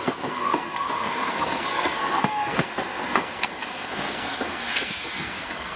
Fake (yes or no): yes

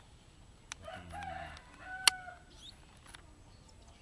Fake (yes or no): no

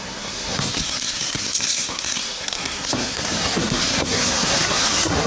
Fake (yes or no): yes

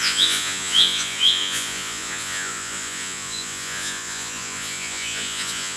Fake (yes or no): yes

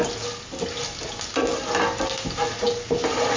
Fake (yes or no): no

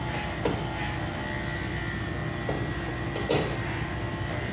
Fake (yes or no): no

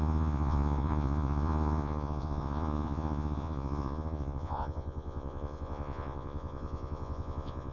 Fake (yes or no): yes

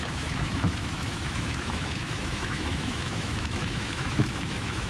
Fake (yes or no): yes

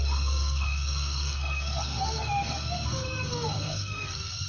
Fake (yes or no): yes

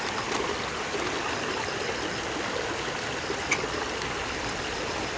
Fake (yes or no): no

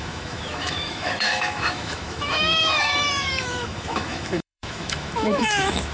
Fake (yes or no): yes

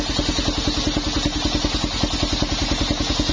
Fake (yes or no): no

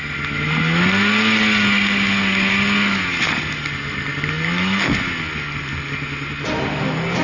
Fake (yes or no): no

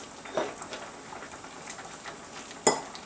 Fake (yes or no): no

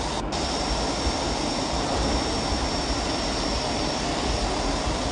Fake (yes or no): no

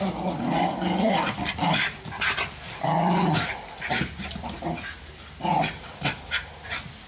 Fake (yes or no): no